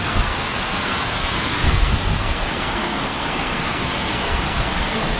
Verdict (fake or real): fake